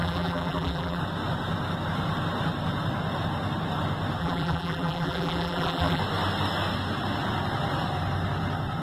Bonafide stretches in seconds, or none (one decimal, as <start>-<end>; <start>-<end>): 1.0-4.2; 6.0-8.8